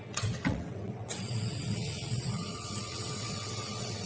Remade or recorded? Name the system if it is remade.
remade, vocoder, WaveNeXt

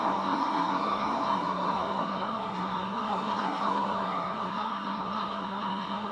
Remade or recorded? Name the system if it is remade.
remade, codec, SNAC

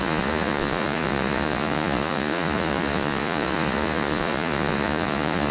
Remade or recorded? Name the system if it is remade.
remade, vocoder, Vocos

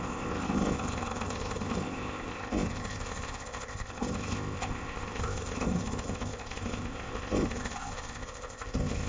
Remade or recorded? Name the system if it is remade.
remade, codec, ZipCodec